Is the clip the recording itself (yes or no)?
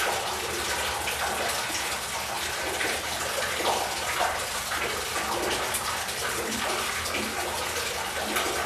yes